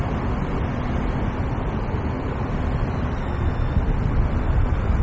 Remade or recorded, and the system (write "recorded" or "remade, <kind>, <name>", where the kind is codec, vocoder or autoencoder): recorded